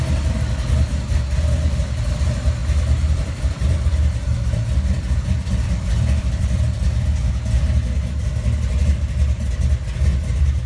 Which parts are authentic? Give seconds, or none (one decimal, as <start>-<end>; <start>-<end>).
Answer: 0.0-2.6; 7.3-10.7